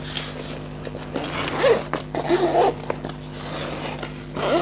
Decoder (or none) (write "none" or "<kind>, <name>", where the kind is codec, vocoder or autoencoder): none